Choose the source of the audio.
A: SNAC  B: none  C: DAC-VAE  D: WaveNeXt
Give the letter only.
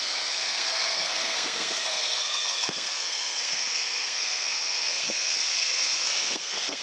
A